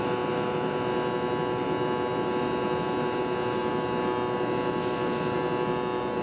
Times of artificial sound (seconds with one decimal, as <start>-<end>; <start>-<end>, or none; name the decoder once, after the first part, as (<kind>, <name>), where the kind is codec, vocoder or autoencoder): none